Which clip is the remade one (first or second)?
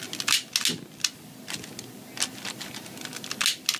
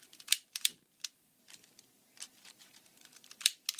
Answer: second